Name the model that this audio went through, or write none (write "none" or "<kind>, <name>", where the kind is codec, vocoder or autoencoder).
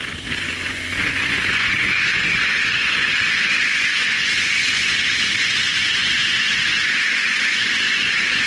vocoder, Vocos